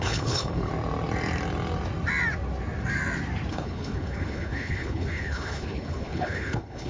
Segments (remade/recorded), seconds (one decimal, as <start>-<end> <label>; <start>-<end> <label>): 0.0-0.7 remade; 0.7-3.5 recorded; 3.5-6.9 remade